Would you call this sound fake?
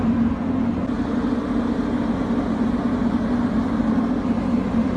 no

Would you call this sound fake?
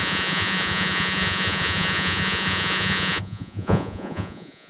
yes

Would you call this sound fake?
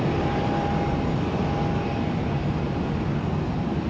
no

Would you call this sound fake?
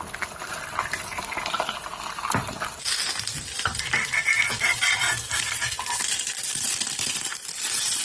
no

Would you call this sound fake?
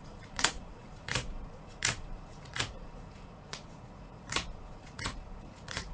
yes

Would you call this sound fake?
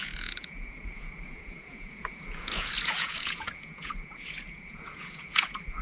yes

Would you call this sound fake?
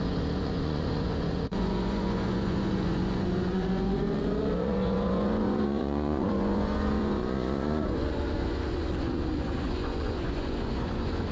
yes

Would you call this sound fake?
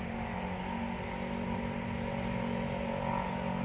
no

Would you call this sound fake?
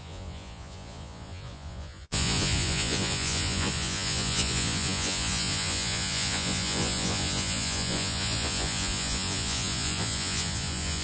yes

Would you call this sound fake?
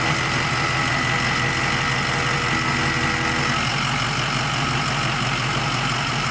no